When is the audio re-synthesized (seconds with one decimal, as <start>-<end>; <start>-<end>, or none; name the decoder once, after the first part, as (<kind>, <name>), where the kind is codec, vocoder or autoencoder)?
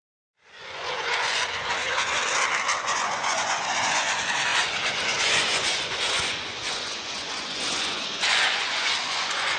0.0-2.2 (vocoder, Vocos); 2.8-9.6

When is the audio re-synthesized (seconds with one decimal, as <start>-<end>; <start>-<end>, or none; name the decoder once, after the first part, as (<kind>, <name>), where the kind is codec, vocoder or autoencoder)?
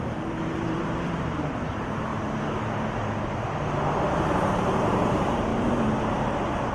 0.0-2.1 (vocoder, BigVGAN v2); 3.9-6.7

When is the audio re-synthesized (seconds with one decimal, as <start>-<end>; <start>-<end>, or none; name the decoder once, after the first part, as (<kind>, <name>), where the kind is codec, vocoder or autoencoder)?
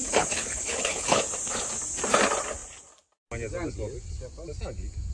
0.0-1.2 (codec, HILCodec)